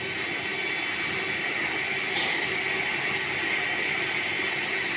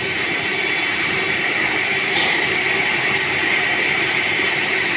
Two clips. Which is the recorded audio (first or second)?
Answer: first